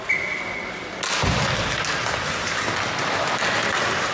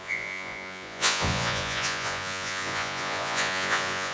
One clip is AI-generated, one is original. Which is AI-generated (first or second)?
second